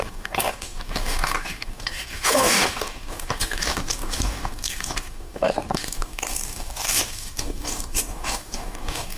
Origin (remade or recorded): remade